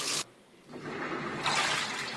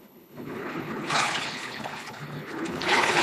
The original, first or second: first